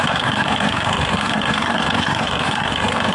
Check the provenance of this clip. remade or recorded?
remade